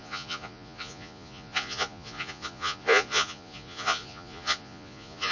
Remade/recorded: remade